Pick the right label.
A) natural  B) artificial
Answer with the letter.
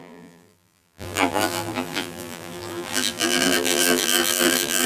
B